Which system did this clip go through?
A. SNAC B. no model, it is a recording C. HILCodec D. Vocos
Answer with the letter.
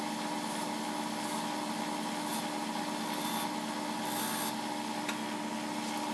B